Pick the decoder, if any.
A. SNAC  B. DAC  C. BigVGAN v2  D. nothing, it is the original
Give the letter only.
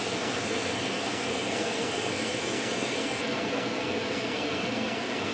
A